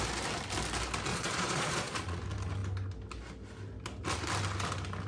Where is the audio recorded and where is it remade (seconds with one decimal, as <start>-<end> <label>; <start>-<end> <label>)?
0.0-1.1 recorded; 1.1-2.2 remade; 2.2-5.1 recorded